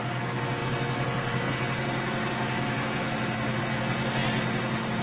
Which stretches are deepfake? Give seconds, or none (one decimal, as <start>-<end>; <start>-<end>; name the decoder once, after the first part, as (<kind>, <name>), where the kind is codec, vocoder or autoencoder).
none